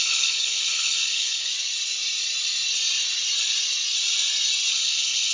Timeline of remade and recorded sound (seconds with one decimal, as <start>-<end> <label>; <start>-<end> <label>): 0.0-1.5 remade; 1.5-4.7 recorded; 4.7-5.3 remade